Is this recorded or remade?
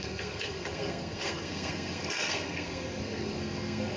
remade